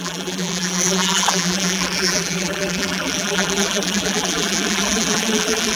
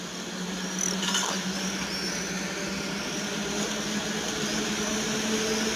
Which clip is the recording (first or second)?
second